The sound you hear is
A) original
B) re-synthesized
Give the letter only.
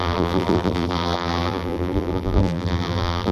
B